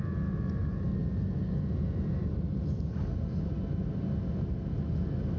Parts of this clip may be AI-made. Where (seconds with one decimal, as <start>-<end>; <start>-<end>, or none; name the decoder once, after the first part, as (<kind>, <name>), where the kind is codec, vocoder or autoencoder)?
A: none